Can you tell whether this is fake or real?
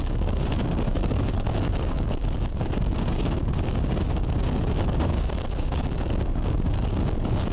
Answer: fake